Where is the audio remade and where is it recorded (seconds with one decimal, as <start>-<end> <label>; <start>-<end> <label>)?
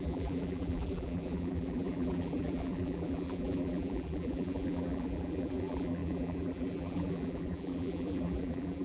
0.0-8.8 remade